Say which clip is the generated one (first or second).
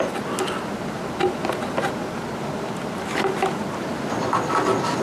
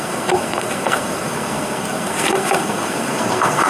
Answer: second